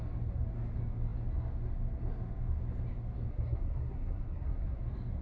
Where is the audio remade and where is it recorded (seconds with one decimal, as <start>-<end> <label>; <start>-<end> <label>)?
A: 0.0-3.3 recorded; 3.3-4.8 remade; 4.8-5.2 recorded